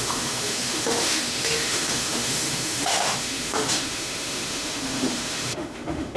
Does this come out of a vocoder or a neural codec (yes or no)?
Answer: yes